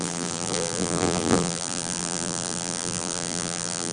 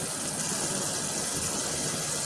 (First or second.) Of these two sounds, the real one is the second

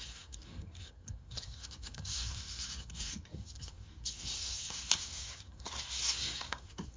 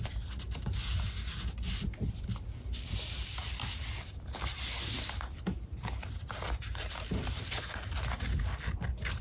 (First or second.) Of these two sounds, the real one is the second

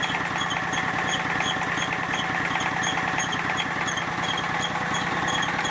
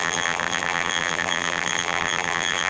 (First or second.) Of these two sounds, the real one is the first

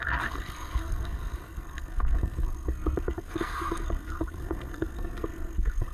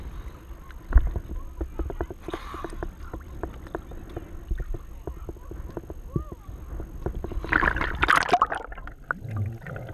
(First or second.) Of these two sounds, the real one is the second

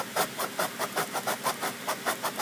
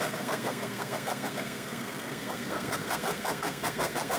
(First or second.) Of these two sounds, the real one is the first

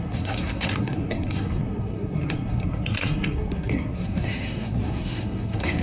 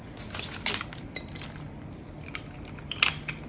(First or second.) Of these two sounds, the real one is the second